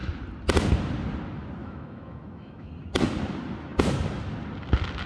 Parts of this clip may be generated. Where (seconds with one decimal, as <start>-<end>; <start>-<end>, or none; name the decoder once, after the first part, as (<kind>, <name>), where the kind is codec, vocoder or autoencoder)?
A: 1.6-2.7 (autoencoder, DAC-VAE)